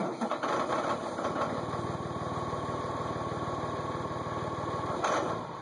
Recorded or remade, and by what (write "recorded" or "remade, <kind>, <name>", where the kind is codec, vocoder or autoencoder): recorded